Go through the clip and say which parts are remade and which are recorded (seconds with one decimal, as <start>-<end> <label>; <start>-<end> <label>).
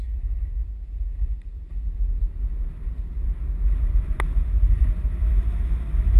0.0-6.2 recorded